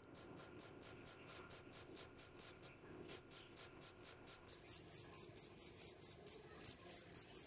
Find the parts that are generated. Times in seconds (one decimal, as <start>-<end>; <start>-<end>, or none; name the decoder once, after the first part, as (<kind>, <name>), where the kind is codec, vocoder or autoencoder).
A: 0.0-4.5 (codec, ZipCodec)